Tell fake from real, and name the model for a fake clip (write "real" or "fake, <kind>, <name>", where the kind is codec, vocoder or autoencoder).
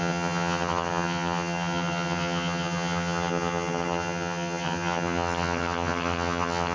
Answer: fake, vocoder, HiFi-GAN